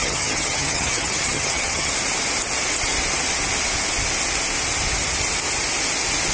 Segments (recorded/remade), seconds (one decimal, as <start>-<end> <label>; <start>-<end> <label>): 0.0-1.9 remade; 1.9-6.3 recorded